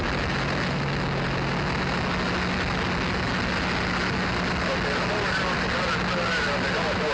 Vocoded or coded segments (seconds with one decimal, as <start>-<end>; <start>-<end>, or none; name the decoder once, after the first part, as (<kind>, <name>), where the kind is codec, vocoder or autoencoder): none